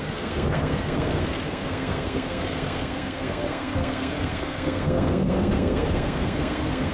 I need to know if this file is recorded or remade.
remade